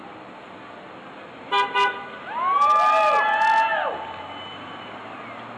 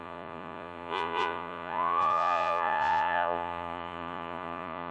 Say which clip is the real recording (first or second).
first